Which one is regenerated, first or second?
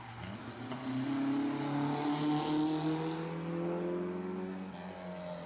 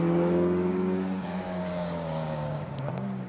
second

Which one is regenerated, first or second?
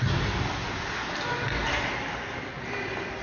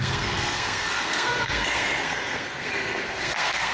second